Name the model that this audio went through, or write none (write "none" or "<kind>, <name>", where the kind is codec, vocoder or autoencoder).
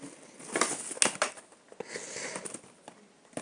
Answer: none